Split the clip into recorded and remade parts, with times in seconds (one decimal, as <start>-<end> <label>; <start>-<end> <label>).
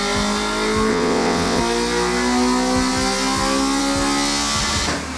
0.0-0.9 recorded; 0.9-1.6 remade; 1.6-5.2 recorded